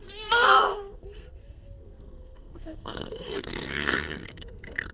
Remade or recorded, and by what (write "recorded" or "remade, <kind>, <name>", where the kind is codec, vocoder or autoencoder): remade, codec, SNAC